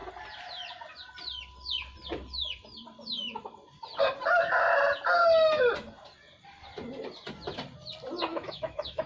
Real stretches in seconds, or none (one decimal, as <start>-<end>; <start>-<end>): 0.0-8.3